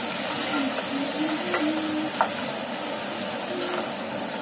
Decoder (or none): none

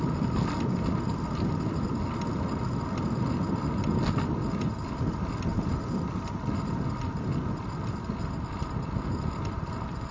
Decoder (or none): none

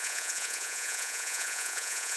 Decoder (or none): vocoder, Vocos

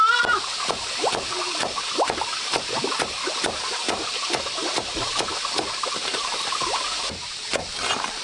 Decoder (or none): vocoder, BigVGAN v2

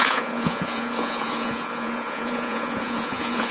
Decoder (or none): vocoder, Vocos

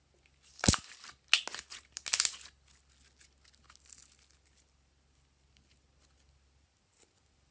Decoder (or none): none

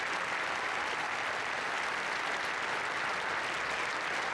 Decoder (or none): none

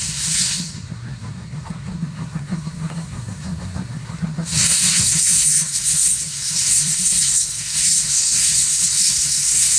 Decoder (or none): codec, SNAC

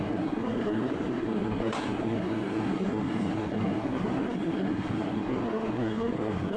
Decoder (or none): codec, SNAC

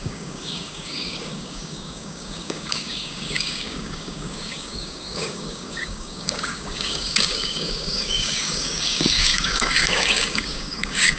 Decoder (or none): codec, DAC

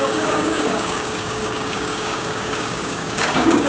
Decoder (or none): codec, DAC